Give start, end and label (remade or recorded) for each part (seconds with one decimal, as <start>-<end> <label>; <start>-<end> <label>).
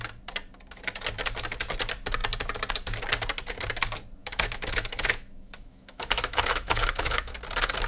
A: 0.0-4.2 recorded; 4.2-7.4 remade; 7.4-7.9 recorded